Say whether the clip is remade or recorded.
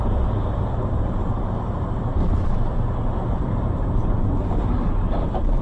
remade